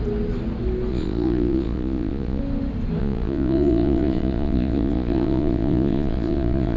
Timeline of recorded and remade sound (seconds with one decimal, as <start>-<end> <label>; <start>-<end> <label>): 0.0-0.9 recorded; 0.9-2.4 remade; 2.4-3.0 recorded; 3.0-6.8 remade